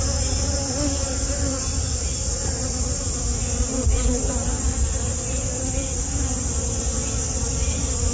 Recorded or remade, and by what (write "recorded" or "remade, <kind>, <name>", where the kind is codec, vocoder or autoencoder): recorded